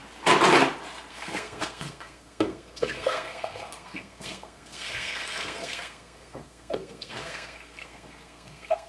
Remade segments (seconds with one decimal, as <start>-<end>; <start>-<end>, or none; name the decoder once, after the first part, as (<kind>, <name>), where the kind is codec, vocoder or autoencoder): 1.1-8.9 (codec, SNAC)